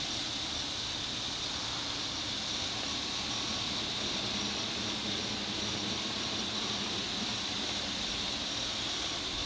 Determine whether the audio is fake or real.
real